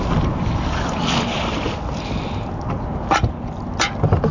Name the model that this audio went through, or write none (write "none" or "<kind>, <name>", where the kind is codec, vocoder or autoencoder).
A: none